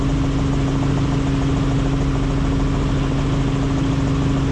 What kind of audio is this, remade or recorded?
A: recorded